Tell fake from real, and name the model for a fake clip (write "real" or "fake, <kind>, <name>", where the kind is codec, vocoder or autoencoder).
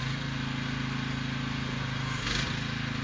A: real